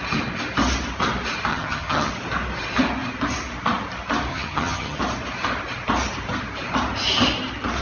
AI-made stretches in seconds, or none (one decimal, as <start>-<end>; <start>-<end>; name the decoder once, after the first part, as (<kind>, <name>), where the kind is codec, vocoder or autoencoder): 1.5-2.1 (vocoder, HiFi-GAN); 4.3-5.0